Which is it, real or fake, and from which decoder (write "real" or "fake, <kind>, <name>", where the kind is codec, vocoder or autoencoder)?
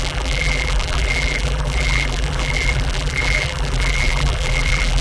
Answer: fake, vocoder, BigVGAN v2